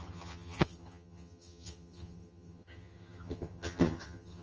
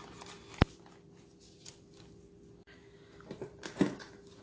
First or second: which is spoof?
first